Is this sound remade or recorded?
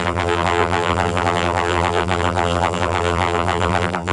remade